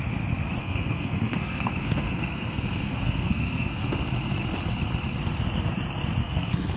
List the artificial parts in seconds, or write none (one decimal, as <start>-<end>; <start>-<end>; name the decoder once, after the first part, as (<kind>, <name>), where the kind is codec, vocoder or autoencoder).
0.6-3.9 (codec, SNAC); 6.2-6.8